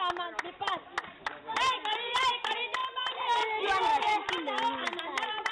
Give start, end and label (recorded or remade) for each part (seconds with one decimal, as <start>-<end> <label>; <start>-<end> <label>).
0.0-5.5 recorded